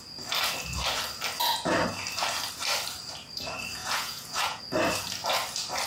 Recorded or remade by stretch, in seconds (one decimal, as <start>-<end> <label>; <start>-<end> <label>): 0.0-3.8 recorded; 3.8-4.6 remade; 4.6-5.9 recorded